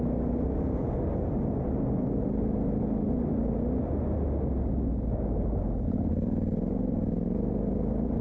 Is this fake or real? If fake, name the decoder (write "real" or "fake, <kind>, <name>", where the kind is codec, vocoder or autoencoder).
real